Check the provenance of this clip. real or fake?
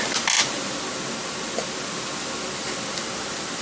real